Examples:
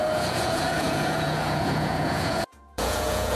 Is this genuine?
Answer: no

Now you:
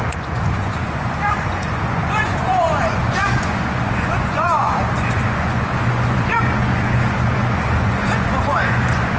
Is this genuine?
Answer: no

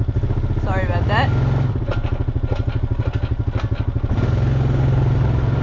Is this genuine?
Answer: yes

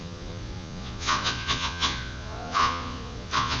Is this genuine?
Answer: no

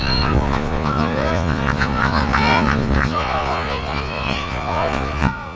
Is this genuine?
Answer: no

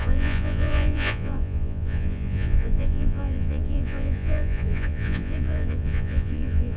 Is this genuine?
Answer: no